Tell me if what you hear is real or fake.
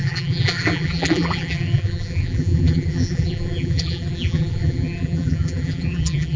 fake